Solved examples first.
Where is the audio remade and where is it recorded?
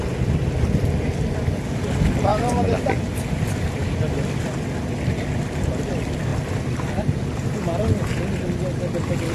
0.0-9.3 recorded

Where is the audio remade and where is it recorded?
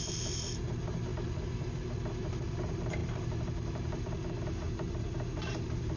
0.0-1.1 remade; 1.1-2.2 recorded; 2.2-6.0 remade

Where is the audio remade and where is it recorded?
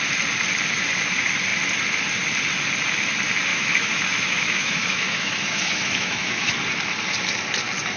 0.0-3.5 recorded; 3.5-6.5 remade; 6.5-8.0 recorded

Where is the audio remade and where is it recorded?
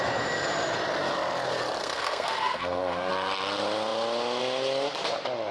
0.0-1.8 recorded; 1.8-3.1 remade; 3.1-5.5 recorded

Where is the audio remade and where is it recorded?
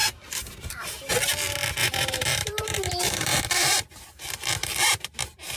0.0-1.1 remade; 1.1-1.8 recorded; 1.8-5.6 remade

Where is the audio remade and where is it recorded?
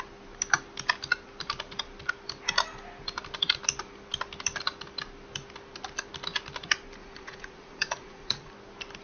0.0-7.0 recorded; 7.0-8.5 remade; 8.5-9.0 recorded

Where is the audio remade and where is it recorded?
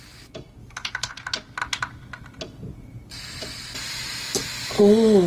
0.0-0.6 recorded; 0.6-1.1 remade; 1.1-5.3 recorded